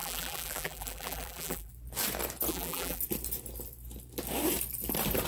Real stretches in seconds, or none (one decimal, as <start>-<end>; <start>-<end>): 1.7-2.5; 3.0-5.3